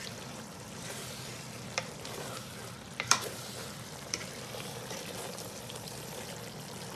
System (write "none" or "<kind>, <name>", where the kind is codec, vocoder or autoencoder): vocoder, BigVGAN v2